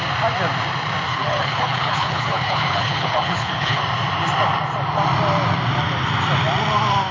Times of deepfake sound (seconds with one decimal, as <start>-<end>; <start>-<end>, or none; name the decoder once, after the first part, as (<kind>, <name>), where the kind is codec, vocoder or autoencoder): 1.1-3.8 (codec, HILCodec)

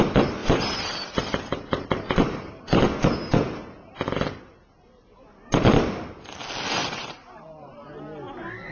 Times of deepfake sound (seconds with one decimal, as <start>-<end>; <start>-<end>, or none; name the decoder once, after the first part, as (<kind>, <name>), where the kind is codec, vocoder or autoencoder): 0.4-3.0 (vocoder, BigVGAN v2); 6.8-8.0

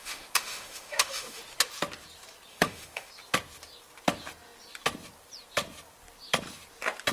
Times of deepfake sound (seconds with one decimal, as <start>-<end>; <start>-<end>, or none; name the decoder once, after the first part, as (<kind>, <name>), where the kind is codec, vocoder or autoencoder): 0.0-1.4 (autoencoder, DAC-VAE); 2.5-3.1

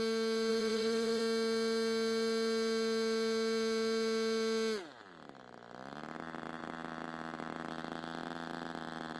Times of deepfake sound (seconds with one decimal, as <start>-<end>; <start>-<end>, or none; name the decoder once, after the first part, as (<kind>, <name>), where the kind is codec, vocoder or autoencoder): 0.5-1.2 (vocoder, Vocos)

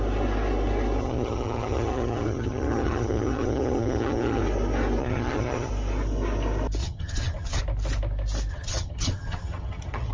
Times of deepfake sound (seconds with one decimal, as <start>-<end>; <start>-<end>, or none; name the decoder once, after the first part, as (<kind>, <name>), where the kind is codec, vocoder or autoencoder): 1.0-4.4 (vocoder, HiFi-GAN); 5.0-5.7; 6.8-7.6; 8.5-10.1

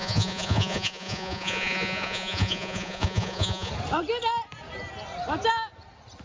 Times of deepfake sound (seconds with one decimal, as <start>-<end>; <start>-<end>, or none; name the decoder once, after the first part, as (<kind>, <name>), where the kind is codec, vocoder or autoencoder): 0.0-3.7 (vocoder, Vocos)

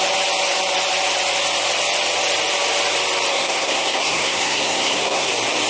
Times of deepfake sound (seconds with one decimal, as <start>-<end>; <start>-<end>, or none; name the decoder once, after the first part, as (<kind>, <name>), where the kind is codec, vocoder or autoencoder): 3.3-5.3 (codec, SNAC)